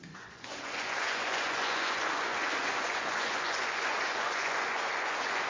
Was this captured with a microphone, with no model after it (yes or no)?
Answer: no